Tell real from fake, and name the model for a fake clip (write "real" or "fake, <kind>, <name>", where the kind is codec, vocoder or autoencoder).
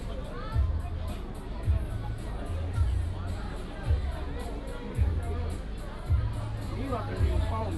real